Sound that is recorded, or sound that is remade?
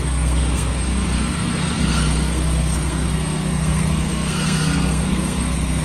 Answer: remade